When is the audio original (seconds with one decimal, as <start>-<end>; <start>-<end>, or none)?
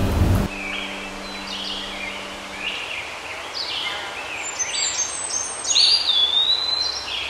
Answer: 0.0-7.3